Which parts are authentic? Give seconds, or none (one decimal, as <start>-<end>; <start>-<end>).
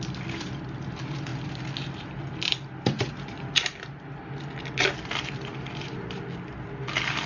0.0-5.5; 6.2-7.3